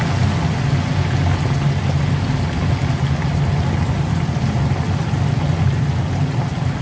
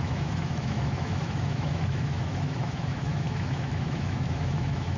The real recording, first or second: first